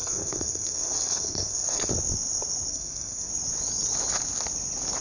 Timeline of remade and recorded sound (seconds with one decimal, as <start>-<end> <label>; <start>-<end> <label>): 0.0-1.9 remade; 1.9-2.7 recorded; 2.7-3.3 remade; 3.3-5.0 recorded